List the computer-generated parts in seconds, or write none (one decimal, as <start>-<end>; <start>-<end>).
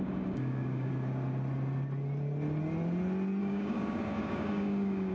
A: 0.0-0.9; 3.4-5.1